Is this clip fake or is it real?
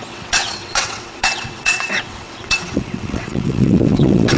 fake